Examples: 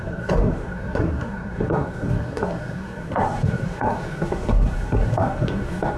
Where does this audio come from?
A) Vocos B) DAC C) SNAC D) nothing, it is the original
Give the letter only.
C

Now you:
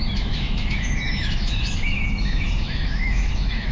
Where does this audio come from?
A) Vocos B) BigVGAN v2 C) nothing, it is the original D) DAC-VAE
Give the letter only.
D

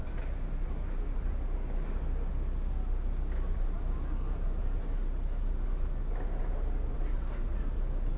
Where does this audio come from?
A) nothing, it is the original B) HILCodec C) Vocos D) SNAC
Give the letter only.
A